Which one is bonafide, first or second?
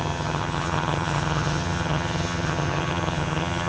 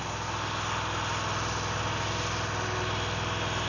second